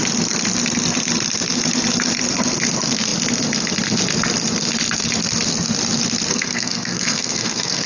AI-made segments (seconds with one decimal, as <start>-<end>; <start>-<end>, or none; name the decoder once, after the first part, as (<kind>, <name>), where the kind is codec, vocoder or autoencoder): 6.3-7.9 (codec, SNAC)

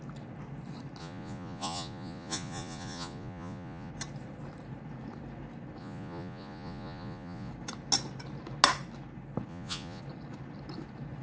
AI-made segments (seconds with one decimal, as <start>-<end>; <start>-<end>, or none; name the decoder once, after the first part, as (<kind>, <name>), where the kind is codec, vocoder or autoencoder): 1.0-3.9 (vocoder, Vocos); 5.8-7.5; 9.5-10.0

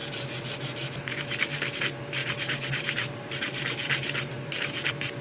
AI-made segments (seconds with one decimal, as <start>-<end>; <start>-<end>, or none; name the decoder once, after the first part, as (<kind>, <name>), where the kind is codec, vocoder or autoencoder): 0.0-1.8 (vocoder, BigVGAN v2); 2.2-4.6